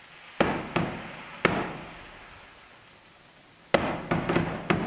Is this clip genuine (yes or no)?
yes